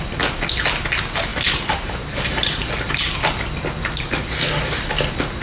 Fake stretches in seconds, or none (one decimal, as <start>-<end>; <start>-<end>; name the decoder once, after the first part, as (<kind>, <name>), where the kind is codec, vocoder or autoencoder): none